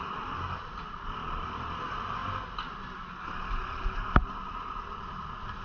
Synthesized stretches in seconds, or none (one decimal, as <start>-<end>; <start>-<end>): none